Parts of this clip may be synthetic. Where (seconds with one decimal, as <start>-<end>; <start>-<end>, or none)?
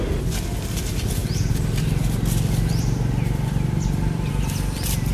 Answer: none